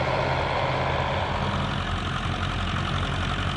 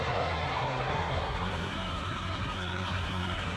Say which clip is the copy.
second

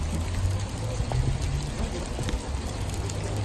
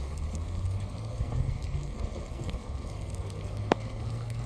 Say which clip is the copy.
second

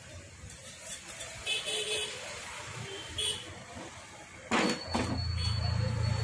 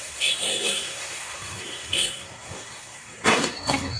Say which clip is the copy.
second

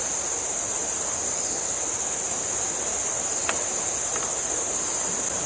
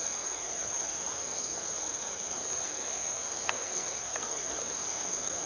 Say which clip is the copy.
second